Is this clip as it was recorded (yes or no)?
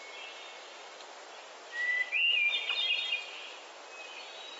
yes